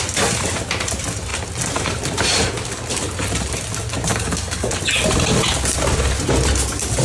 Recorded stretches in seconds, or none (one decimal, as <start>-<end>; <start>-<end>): 0.0-4.1; 4.7-7.0